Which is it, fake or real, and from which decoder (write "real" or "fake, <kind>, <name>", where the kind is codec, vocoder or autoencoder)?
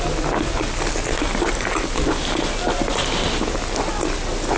real